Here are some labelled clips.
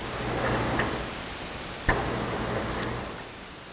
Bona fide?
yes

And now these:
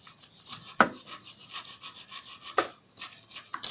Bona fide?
yes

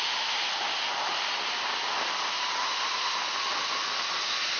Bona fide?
yes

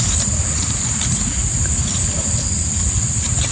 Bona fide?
yes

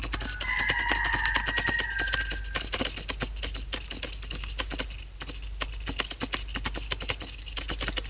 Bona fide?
yes